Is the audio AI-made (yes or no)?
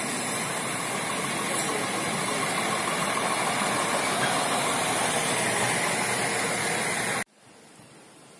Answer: no